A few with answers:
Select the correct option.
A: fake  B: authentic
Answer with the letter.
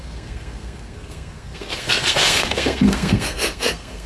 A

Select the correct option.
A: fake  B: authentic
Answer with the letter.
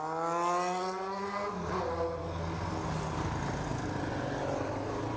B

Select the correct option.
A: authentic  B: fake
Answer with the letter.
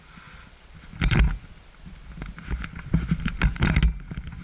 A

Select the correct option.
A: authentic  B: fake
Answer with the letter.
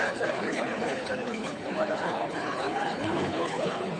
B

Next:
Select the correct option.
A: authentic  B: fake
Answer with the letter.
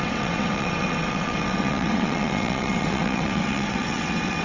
B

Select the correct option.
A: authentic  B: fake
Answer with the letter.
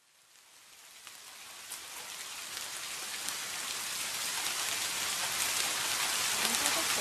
A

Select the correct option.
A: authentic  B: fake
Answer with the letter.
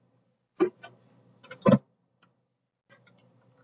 A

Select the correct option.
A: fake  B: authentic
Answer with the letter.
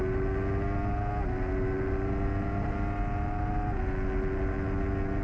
B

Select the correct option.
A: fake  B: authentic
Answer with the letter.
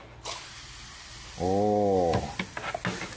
B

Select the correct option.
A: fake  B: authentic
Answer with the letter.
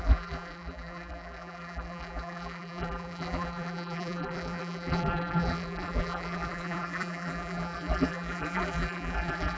A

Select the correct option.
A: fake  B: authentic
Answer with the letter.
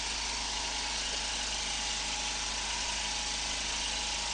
B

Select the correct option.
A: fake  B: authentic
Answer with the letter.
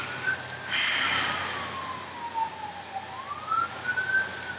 B